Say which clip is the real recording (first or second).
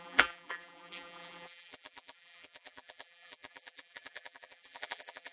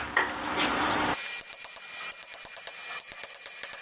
second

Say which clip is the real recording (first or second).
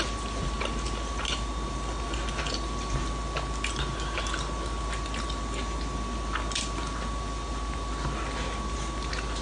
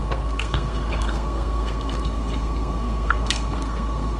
first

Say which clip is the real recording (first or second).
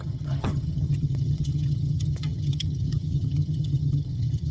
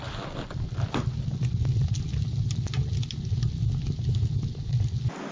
second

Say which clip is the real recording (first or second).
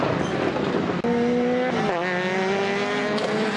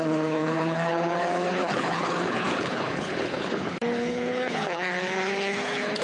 first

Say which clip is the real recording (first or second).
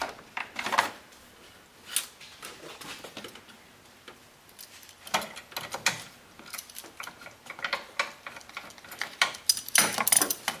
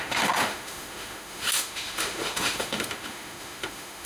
first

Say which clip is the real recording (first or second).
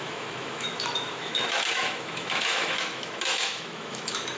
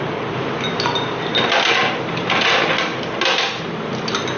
second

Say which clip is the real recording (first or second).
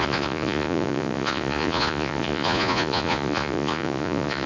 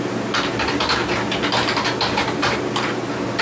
second